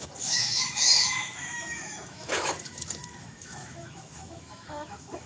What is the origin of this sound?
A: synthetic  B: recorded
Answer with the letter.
A